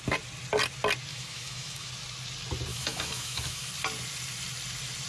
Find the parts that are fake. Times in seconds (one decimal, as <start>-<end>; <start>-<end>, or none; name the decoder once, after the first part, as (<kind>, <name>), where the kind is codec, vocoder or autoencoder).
1.1-1.9 (autoencoder, DAC-VAE); 2.7-3.7